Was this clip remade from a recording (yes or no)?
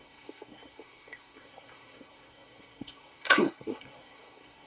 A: yes